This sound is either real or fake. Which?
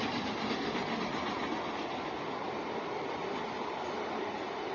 real